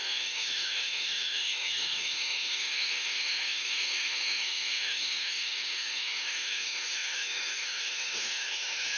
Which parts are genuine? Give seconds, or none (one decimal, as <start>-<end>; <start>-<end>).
none